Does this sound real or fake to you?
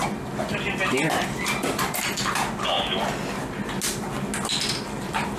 real